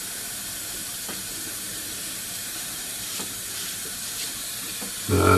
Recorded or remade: remade